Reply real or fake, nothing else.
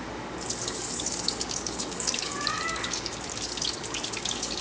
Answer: fake